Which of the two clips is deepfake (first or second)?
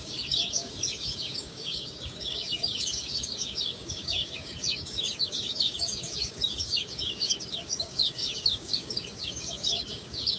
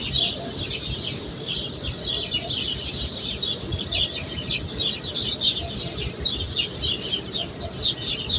first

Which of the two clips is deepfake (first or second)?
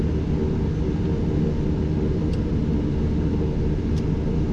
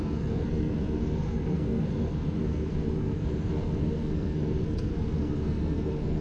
second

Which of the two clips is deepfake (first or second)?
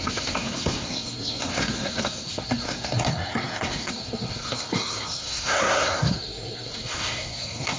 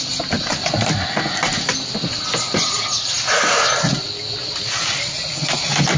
first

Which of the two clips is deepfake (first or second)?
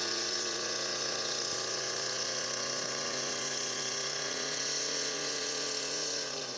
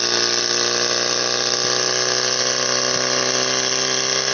first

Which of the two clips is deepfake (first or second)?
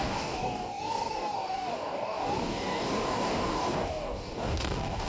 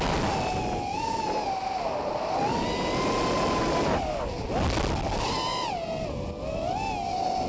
first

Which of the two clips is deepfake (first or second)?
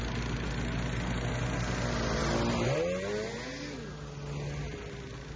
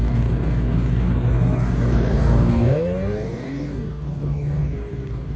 second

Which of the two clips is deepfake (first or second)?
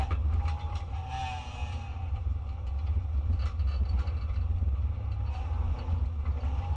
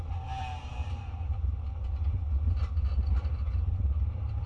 second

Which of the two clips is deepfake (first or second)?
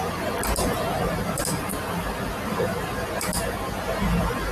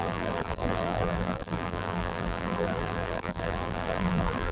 second